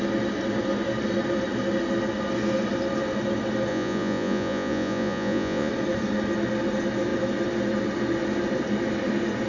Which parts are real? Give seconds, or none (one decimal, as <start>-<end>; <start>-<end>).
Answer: 0.0-3.7; 5.7-9.5